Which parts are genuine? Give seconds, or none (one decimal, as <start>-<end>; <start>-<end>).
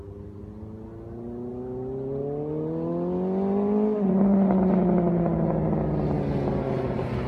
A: 0.0-7.3